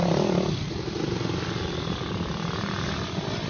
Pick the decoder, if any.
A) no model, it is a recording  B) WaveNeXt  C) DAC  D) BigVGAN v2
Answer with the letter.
A